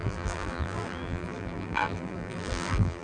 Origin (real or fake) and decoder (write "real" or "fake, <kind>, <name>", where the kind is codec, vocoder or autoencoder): fake, vocoder, BigVGAN v2